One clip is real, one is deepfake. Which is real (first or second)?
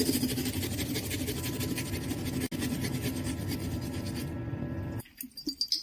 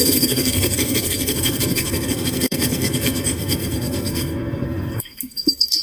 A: first